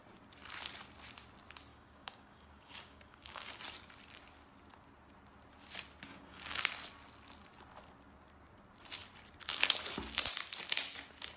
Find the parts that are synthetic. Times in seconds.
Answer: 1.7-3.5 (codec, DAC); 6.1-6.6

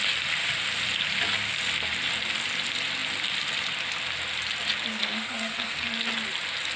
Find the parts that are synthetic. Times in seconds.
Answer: 4.9-5.9 (codec, SNAC)